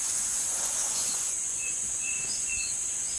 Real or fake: fake